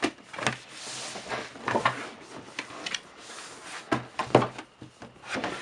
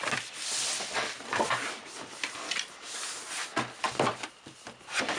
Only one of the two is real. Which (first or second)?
first